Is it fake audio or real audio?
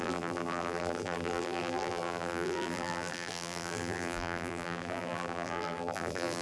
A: fake